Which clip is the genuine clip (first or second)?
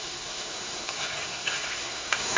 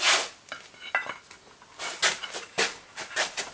second